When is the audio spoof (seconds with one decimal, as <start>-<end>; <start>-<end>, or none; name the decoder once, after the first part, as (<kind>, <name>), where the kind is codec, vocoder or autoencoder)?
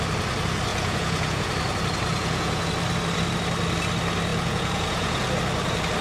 0.7-1.5 (vocoder, Vocos); 2.1-2.7; 4.3-5.3